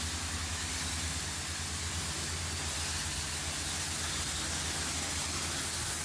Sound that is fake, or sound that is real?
real